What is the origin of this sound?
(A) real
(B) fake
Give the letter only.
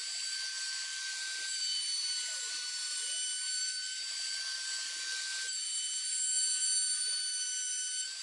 B